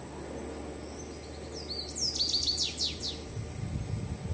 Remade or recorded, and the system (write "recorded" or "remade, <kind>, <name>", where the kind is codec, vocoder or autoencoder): recorded